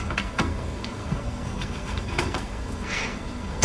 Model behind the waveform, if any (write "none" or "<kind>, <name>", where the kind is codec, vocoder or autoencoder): codec, SNAC